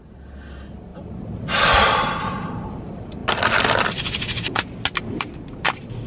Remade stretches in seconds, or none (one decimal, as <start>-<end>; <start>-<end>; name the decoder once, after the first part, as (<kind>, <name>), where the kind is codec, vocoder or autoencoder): 0.9-2.8 (vocoder, BigVGAN v2)